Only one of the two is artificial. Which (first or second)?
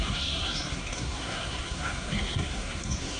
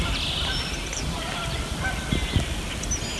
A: first